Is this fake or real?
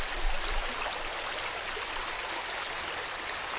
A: real